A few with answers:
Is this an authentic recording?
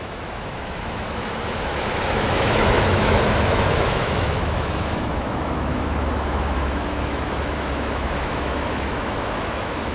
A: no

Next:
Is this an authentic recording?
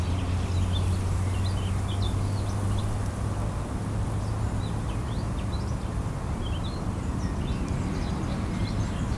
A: yes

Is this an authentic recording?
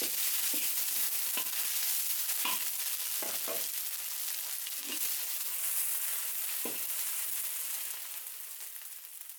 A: yes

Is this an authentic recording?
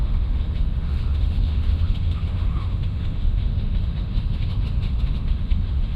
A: no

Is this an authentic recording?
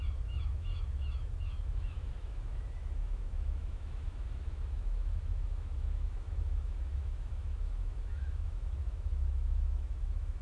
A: no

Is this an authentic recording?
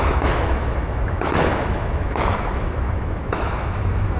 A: no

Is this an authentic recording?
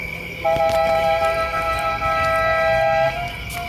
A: yes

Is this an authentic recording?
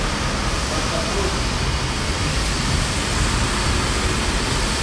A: yes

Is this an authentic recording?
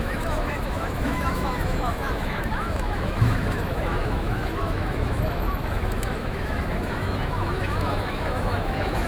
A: no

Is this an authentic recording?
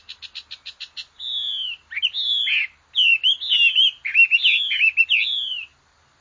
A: yes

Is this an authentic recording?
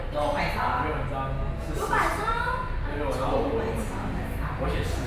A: yes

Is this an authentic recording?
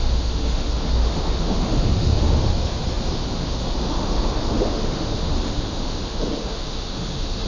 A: no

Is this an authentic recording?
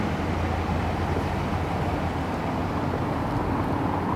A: yes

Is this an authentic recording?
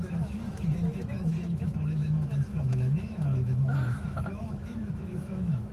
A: no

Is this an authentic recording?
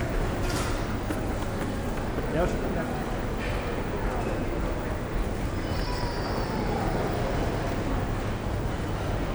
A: yes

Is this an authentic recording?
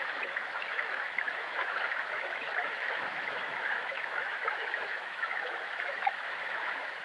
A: no